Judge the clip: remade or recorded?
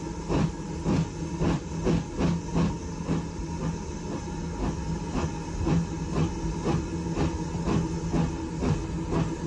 recorded